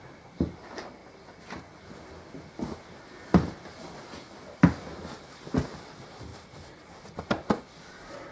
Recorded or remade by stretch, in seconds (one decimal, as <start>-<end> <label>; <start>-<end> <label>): 0.0-8.3 recorded